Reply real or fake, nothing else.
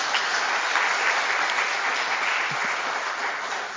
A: real